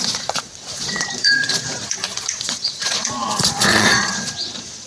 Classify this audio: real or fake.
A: fake